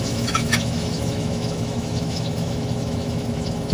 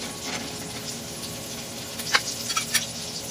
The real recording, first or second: second